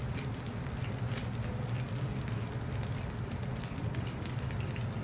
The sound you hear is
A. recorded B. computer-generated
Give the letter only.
B